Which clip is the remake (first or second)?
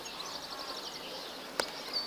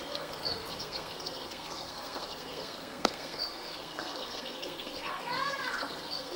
second